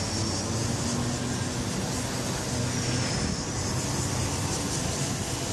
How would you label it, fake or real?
real